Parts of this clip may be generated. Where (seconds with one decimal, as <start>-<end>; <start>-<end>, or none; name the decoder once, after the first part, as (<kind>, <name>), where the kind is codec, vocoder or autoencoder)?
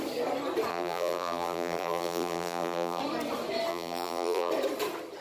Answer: 0.7-3.0 (vocoder, BigVGAN v2); 3.7-4.5